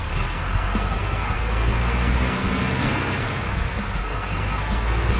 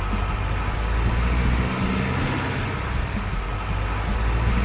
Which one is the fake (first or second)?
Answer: first